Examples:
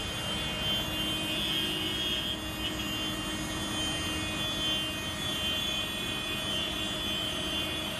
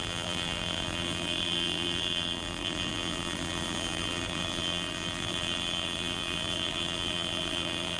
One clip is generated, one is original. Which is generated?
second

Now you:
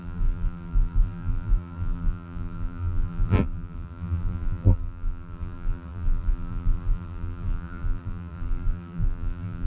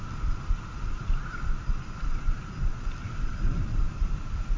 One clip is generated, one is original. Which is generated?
first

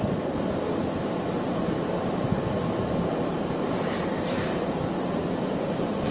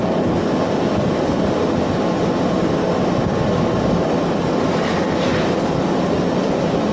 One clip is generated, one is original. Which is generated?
first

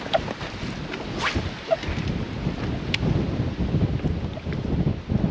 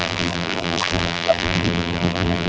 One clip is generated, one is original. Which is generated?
second